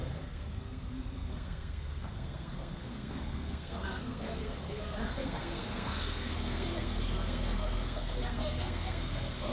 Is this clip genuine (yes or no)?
no